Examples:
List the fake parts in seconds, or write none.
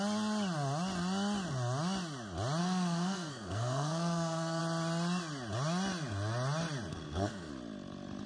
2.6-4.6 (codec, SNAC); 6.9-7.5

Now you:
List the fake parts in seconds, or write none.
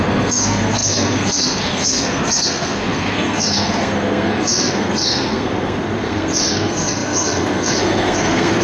0.0-8.6 (codec, SNAC)